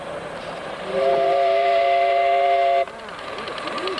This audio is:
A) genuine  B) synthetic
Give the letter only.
B